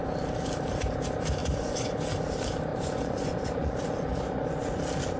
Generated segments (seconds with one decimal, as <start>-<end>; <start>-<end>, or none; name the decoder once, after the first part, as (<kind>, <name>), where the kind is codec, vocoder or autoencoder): 1.4-2.1 (vocoder, Vocos); 2.7-4.8